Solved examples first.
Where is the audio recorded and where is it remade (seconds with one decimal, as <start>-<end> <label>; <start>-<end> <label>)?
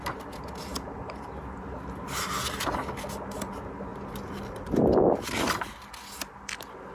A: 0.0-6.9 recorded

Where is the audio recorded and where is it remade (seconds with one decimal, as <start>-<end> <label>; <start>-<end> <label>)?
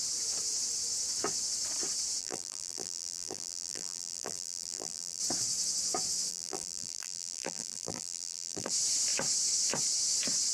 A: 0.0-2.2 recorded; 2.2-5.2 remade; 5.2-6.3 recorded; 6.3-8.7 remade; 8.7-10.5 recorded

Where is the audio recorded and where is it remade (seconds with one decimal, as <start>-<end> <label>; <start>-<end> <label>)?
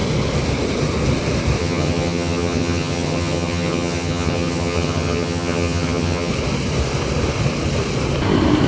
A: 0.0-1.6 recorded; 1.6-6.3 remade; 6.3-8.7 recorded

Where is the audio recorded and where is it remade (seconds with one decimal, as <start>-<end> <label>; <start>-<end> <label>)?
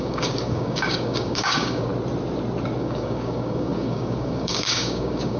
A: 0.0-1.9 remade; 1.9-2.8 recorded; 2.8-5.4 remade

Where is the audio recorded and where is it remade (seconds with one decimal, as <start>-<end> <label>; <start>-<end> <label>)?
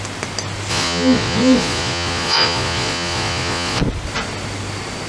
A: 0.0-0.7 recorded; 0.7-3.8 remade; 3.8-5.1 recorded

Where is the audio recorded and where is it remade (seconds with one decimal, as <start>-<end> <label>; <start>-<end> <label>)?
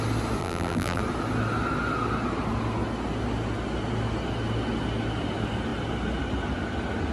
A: 0.0-0.4 recorded; 0.4-1.0 remade; 1.0-7.1 recorded